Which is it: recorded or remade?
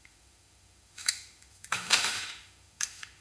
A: remade